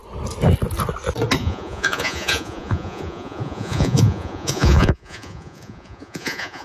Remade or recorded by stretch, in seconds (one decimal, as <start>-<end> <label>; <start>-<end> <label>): 0.0-1.4 recorded; 1.4-6.6 remade